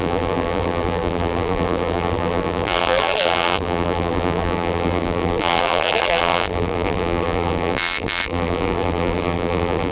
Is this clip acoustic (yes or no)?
no